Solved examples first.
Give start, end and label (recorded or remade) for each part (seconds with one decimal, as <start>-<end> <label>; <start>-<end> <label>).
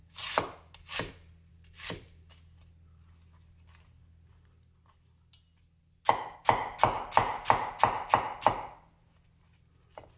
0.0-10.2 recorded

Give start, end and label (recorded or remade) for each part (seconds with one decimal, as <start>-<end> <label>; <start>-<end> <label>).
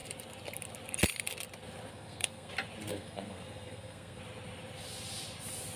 0.0-1.9 recorded; 1.9-2.5 remade; 2.5-2.9 recorded; 2.9-4.2 remade; 4.2-5.8 recorded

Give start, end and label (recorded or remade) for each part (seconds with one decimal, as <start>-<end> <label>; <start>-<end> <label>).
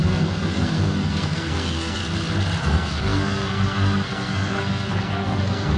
0.0-2.0 remade; 2.0-2.6 recorded; 2.6-5.8 remade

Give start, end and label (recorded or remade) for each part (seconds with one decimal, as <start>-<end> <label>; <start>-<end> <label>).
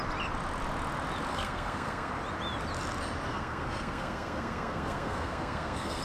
0.0-1.3 recorded; 1.3-2.1 remade; 2.1-3.3 recorded; 3.3-6.0 remade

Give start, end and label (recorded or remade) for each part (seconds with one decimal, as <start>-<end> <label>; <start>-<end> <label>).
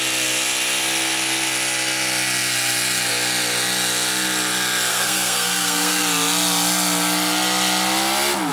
0.0-4.9 recorded; 4.9-6.0 remade; 6.0-8.5 recorded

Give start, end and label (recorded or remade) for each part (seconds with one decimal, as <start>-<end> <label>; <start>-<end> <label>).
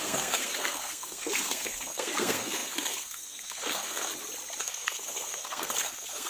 0.0-4.1 remade; 4.1-4.6 recorded; 4.6-6.3 remade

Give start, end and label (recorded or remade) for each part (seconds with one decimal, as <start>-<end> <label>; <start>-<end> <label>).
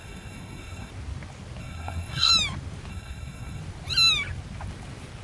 0.0-0.9 remade; 0.9-1.6 recorded; 1.6-2.3 remade; 2.3-2.9 recorded; 2.9-3.6 remade; 3.6-5.2 recorded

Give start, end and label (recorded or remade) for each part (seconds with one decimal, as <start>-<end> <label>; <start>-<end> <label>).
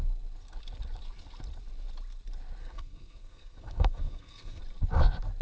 0.0-2.6 recorded; 2.6-4.6 remade; 4.6-5.4 recorded